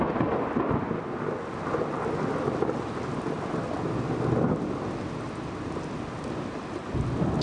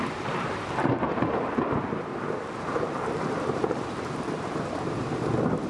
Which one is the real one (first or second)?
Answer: first